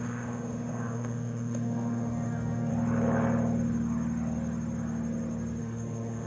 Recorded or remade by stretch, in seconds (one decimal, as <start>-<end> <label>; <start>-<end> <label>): 0.0-2.7 remade; 2.7-5.6 recorded; 5.6-6.3 remade